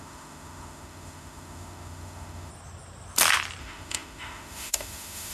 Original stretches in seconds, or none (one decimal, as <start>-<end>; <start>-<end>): 2.5-3.6